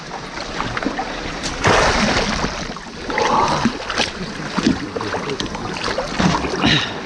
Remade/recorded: recorded